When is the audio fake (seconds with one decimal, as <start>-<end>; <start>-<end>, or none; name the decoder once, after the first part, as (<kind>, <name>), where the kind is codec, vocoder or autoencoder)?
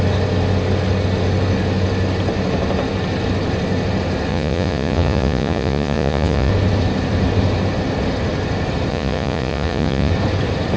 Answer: 4.3-6.5 (vocoder, Vocos); 8.9-10.1